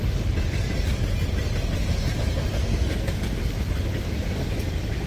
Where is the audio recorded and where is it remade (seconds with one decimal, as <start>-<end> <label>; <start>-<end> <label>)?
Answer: 0.0-2.6 recorded; 2.6-3.2 remade; 3.2-5.1 recorded